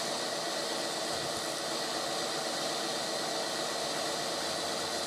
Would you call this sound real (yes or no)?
yes